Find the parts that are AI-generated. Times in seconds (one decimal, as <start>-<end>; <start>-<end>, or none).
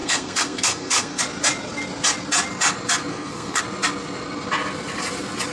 0.0-1.2; 3.1-3.6